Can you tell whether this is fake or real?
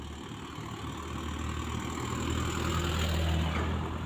real